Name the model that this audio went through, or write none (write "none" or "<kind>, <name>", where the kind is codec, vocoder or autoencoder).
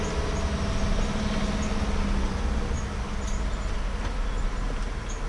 none